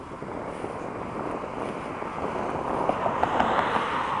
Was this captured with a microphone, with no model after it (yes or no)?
yes